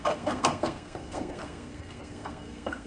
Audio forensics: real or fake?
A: fake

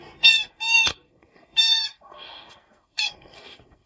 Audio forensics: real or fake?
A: fake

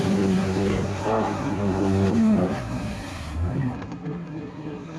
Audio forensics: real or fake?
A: fake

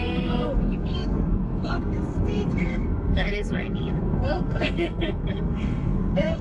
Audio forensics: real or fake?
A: fake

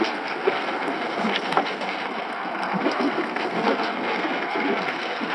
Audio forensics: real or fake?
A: fake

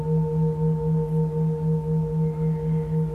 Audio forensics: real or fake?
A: real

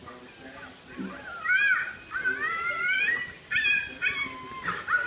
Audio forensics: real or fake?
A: real